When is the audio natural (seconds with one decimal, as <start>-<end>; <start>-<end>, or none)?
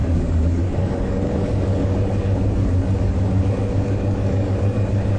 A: none